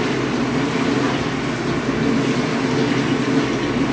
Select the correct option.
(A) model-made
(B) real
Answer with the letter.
B